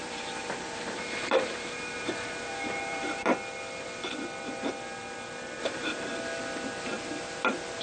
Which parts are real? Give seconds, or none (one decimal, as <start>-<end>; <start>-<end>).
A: 3.3-5.6; 6.1-7.8